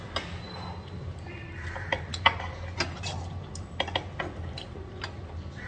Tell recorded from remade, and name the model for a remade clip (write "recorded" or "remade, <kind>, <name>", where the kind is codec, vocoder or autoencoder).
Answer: recorded